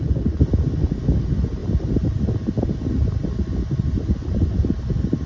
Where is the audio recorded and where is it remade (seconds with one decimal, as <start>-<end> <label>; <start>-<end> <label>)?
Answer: 0.0-5.3 recorded